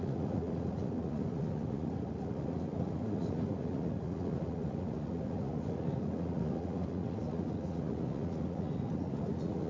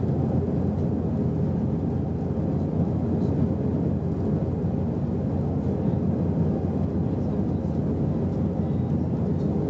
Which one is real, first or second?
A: second